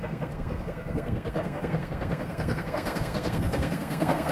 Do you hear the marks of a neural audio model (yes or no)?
yes